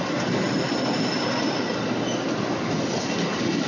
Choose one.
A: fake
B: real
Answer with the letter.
B